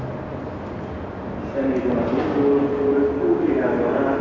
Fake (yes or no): no